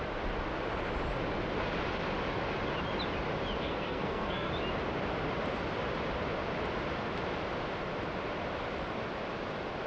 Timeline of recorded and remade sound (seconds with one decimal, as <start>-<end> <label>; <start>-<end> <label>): 0.0-3.6 recorded; 3.6-4.5 remade; 4.5-9.9 recorded